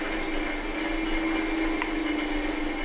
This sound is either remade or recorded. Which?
recorded